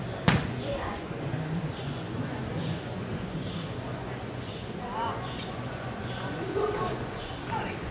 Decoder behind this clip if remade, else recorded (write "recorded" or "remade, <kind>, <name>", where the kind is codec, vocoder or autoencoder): remade, vocoder, Vocos